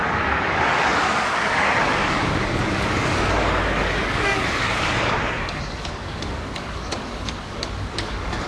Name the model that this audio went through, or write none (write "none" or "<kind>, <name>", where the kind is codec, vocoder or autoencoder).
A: codec, DAC